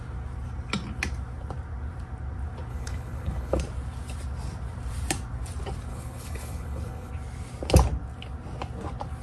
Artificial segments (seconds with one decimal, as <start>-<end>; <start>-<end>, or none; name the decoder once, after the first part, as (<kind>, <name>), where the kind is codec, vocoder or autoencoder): 2.7-3.6 (codec, HILCodec); 5.9-7.1